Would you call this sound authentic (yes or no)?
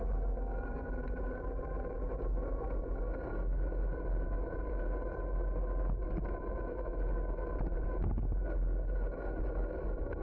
yes